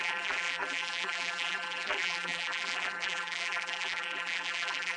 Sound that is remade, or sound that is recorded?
remade